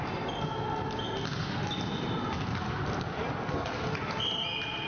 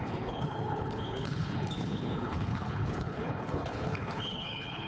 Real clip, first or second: first